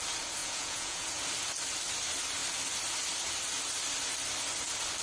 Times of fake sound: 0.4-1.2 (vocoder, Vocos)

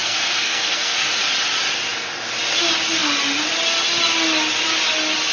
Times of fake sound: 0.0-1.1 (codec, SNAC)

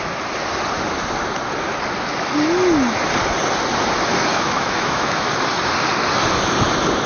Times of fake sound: 4.3-5.3 (autoencoder, DAC-VAE)

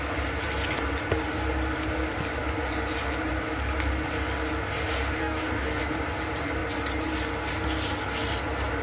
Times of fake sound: 5.2-5.8 (codec, DAC)

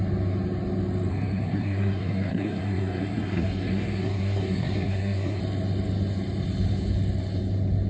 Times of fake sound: 1.1-5.4 (codec, SNAC)